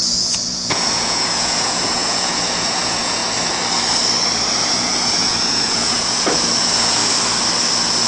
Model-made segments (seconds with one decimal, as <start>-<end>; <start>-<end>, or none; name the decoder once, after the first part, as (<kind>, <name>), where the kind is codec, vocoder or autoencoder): 0.0-3.2 (vocoder, Vocos); 4.7-7.0